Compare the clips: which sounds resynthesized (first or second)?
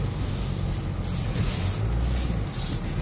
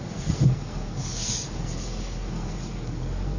second